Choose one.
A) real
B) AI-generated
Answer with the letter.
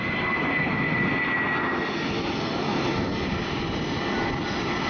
A